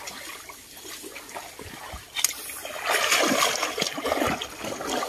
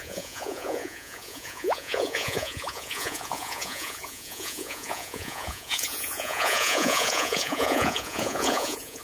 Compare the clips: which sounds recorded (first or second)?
first